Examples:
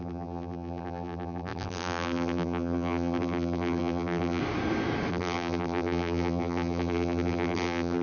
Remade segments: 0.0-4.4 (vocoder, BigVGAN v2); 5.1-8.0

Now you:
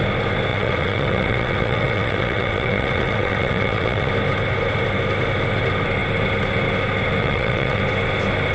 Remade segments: 0.5-4.1 (vocoder, WaveNeXt); 7.2-7.8

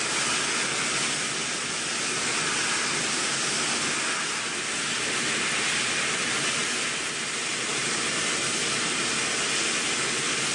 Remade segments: none

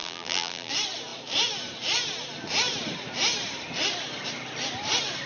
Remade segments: 0.0-0.7 (vocoder, BigVGAN v2)

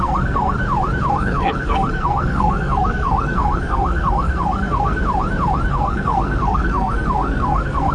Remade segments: 0.0-0.6 (codec, SNAC); 1.1-5.0; 5.7-7.9

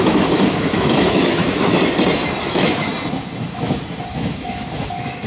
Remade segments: 0.0-1.7 (autoencoder, DAC-VAE); 2.4-2.9; 4.1-5.3

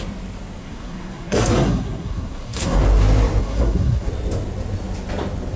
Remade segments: 0.6-2.8 (codec, SNAC); 3.4-4.1